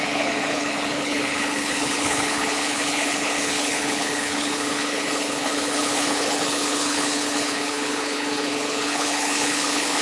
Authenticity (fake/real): fake